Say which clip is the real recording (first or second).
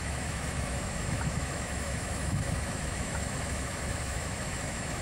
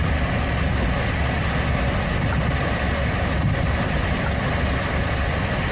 second